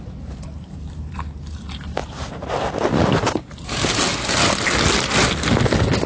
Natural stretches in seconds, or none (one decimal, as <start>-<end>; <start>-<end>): 4.1-6.1

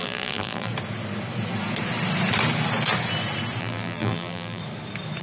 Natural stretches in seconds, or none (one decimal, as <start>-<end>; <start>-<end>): 0.7-3.6; 4.6-5.2

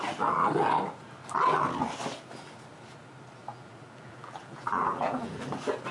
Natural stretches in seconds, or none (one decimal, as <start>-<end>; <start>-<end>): 0.0-3.4; 5.5-5.9

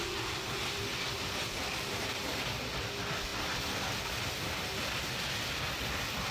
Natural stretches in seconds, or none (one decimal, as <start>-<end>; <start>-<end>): 0.0-0.9; 2.2-6.3